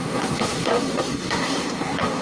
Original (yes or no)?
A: no